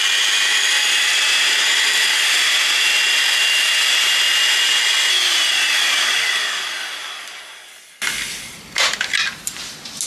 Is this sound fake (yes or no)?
no